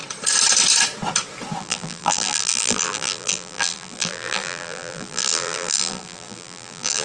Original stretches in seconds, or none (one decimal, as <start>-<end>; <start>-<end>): 0.0-1.6